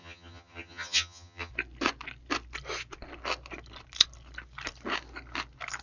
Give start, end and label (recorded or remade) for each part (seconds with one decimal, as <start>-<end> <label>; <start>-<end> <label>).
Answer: 0.0-1.5 remade; 1.5-5.8 recorded